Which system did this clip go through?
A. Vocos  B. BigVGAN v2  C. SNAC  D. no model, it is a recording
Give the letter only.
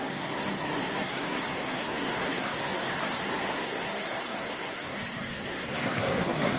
C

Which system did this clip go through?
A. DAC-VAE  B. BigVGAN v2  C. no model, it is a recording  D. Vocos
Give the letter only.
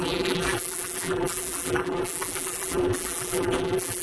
B